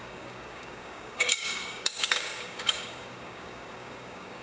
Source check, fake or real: fake